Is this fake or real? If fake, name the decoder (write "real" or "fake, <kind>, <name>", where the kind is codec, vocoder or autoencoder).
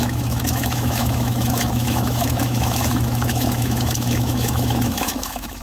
fake, autoencoder, DAC-VAE